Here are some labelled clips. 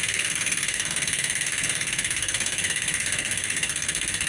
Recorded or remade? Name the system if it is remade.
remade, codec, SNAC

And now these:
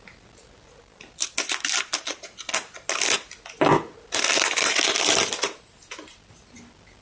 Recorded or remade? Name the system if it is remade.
recorded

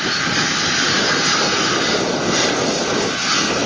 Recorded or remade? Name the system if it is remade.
recorded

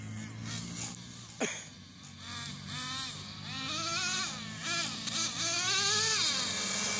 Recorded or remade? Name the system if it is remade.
recorded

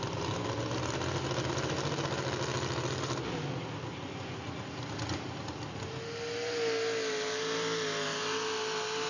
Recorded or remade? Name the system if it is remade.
recorded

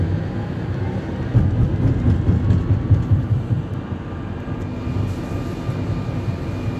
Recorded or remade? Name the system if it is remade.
recorded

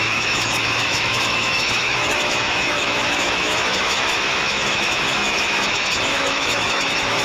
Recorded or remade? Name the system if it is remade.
remade, autoencoder, DAC-VAE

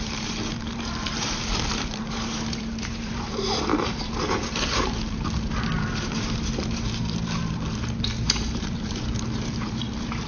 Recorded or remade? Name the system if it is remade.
remade, vocoder, BigVGAN v2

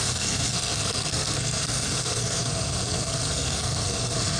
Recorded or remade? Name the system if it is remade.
remade, codec, SNAC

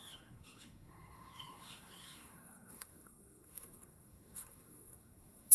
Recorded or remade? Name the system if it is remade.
remade, codec, SNAC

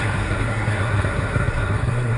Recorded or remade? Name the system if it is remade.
remade, codec, SNAC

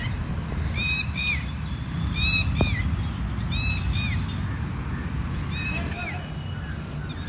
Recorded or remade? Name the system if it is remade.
recorded